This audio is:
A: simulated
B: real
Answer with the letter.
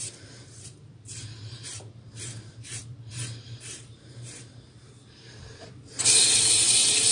A